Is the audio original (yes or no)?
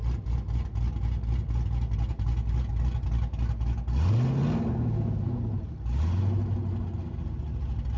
yes